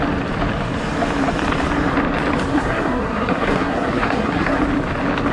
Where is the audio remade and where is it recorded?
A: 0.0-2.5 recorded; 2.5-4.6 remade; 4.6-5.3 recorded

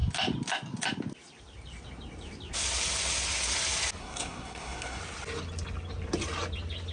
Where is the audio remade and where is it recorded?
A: 0.0-4.0 recorded; 4.0-5.0 remade; 5.0-6.9 recorded

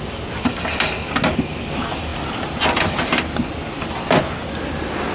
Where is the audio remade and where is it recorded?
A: 0.0-5.1 recorded

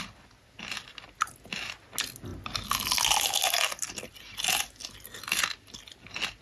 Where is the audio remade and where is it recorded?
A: 0.0-6.4 recorded

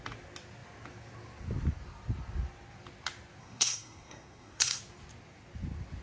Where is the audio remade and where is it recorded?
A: 0.0-3.4 recorded; 3.4-4.8 remade; 4.8-6.0 recorded

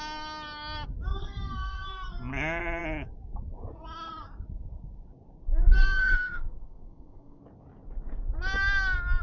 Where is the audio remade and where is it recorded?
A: 0.0-1.1 recorded; 1.1-2.2 remade; 2.2-5.6 recorded; 5.6-7.4 remade; 7.4-9.2 recorded